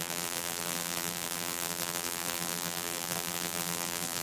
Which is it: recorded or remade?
remade